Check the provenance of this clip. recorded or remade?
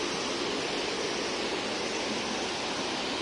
recorded